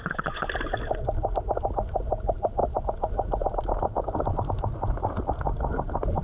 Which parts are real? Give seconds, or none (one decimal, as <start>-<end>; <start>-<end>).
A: 0.5-6.2